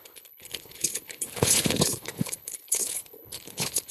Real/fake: fake